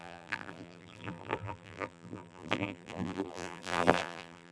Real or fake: fake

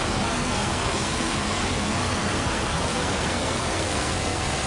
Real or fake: fake